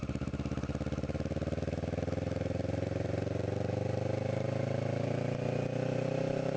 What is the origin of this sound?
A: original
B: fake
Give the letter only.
A